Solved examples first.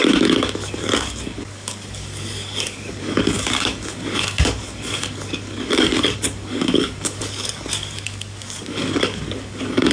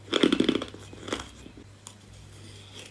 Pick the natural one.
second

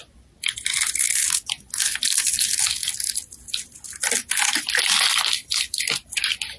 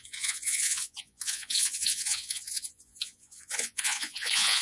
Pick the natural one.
first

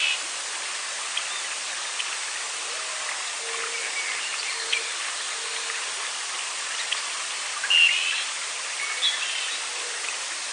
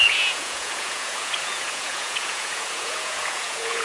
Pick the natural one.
first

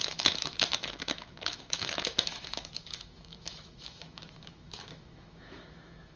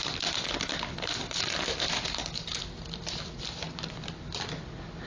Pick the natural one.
second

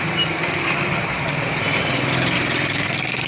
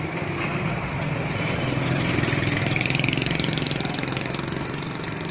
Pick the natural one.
first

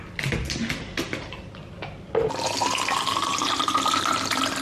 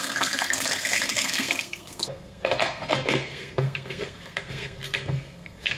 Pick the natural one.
first